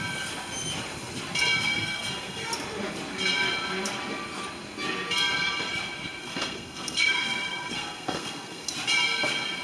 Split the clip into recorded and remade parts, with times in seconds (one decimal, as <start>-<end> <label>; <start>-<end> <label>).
0.0-1.6 recorded; 1.6-2.5 remade; 2.5-6.2 recorded; 6.2-8.7 remade; 8.7-9.6 recorded